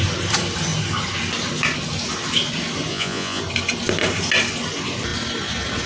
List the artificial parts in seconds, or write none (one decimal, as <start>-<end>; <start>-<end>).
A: 2.9-3.4